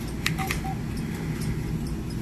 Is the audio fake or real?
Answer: real